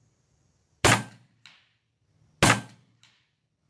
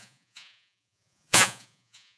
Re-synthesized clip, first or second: second